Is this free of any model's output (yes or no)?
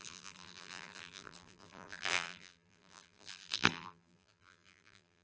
no